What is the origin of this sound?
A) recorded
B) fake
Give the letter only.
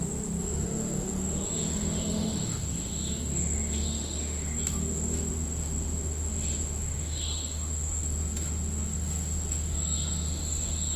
B